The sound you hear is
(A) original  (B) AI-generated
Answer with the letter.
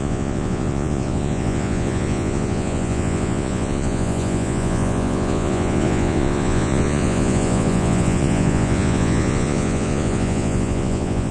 B